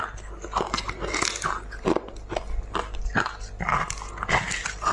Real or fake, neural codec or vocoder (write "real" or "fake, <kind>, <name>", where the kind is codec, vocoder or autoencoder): real